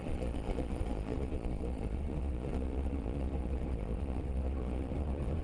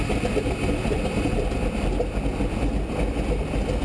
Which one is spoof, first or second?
first